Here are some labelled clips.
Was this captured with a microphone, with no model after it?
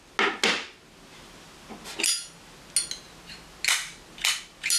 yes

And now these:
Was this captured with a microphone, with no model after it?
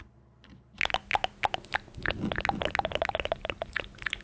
yes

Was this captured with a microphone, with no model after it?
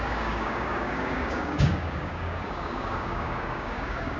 no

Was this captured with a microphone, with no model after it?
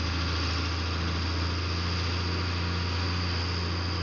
yes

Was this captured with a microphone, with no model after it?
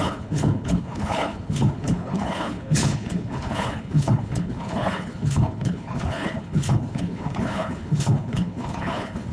no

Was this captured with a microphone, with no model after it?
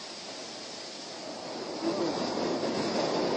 yes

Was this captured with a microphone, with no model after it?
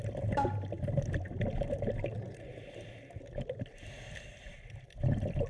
yes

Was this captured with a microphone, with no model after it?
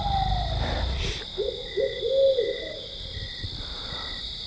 yes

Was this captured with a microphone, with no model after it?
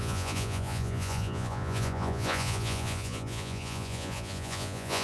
no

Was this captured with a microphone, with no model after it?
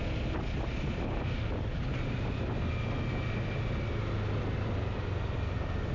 yes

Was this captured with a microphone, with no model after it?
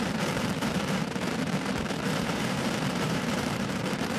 no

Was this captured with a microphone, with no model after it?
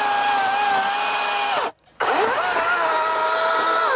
yes